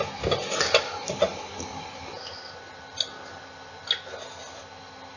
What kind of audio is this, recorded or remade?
recorded